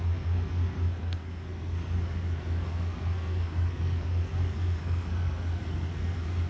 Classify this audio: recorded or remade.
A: remade